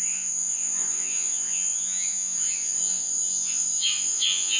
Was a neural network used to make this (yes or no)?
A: yes